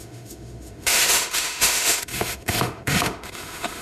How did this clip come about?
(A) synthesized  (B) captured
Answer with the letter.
A